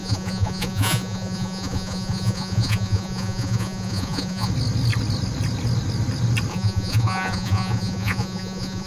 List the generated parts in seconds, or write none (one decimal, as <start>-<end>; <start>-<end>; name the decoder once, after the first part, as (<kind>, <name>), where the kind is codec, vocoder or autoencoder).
0.0-4.5 (vocoder, Vocos); 6.5-8.9